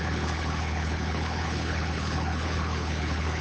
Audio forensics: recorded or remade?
remade